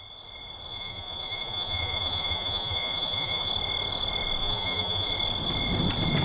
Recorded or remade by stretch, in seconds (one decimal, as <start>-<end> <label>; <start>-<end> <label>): 0.0-0.7 recorded; 0.7-3.5 remade; 3.5-4.4 recorded; 4.4-5.1 remade; 5.1-6.2 recorded